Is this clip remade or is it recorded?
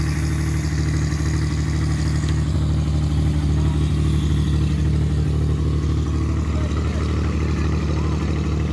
recorded